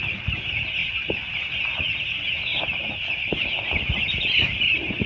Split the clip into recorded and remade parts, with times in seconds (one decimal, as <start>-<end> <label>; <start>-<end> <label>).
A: 0.0-5.1 recorded